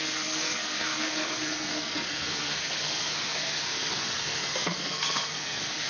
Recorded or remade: remade